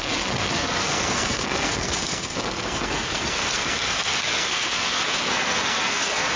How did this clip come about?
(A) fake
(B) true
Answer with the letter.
A